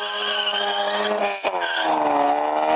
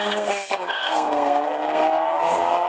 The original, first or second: first